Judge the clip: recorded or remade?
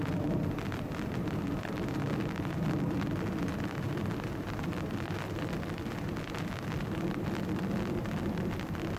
remade